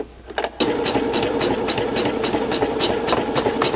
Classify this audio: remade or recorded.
recorded